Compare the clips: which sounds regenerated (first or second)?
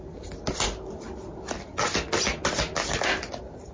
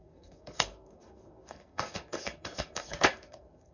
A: second